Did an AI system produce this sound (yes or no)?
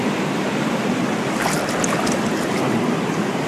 no